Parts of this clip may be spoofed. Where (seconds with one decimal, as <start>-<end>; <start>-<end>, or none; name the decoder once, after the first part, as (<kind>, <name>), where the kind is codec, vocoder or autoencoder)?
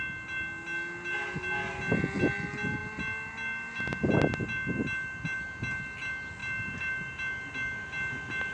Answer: none